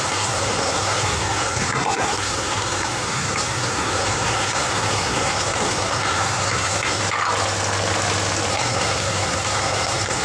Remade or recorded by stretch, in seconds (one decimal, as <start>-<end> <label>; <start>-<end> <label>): 0.0-7.0 remade; 7.0-8.5 recorded; 8.5-10.2 remade